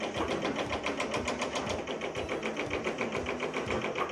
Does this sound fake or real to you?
real